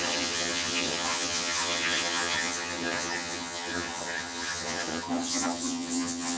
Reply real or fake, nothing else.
fake